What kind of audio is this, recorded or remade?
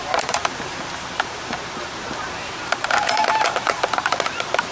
remade